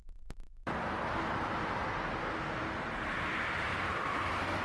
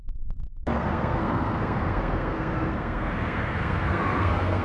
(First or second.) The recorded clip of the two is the first